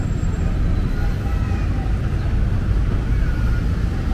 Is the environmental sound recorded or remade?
recorded